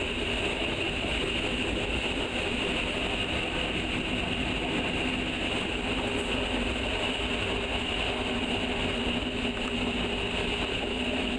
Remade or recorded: recorded